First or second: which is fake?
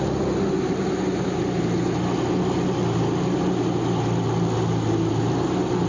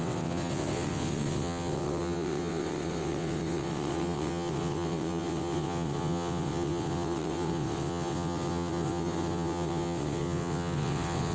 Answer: second